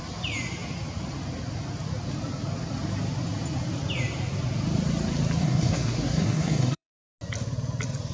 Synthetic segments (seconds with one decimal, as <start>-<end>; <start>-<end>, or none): 5.4-7.0